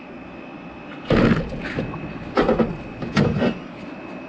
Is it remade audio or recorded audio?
recorded